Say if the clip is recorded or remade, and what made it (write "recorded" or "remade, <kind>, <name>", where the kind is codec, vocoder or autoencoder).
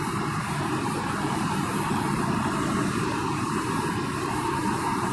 remade, vocoder, BigVGAN v2